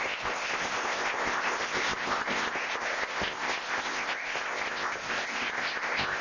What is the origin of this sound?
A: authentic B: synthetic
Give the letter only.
B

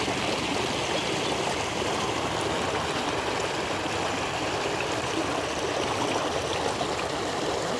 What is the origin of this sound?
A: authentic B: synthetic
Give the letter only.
A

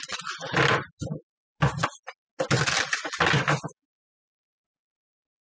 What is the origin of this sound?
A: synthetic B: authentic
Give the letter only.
B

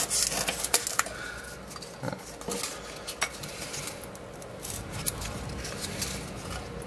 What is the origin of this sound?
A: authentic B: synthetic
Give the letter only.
A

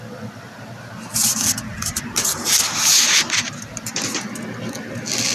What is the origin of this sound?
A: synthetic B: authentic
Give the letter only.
B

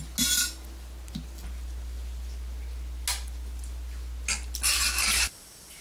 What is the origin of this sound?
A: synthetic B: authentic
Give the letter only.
B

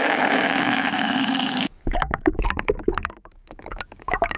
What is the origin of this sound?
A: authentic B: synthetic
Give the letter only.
B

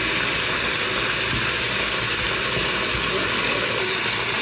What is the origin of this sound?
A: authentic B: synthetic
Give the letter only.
A